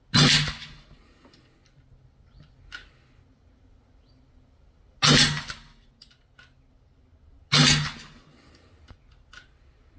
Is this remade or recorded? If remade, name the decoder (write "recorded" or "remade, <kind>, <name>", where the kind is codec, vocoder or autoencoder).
recorded